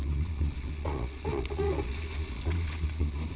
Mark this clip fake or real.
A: fake